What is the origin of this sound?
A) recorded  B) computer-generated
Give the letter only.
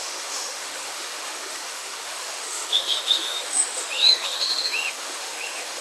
B